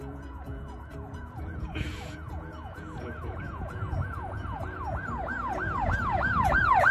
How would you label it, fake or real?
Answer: fake